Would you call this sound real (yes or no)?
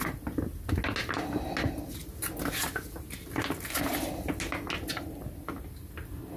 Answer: yes